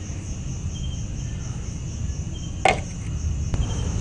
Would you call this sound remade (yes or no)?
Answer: no